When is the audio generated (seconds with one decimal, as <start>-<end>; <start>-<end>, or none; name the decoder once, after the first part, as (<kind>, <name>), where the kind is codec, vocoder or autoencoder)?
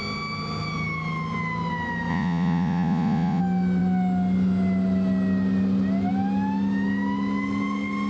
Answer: 2.1-3.4 (vocoder, Vocos)